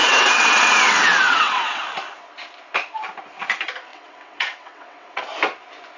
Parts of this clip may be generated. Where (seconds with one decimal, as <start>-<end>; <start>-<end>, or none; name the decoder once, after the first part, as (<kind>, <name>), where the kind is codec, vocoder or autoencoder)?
0.0-1.8 (vocoder, WaveNeXt); 3.9-5.2